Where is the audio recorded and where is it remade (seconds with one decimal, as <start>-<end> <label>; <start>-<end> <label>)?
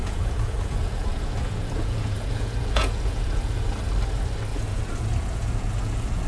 0.0-3.8 remade; 3.8-4.5 recorded; 4.5-6.3 remade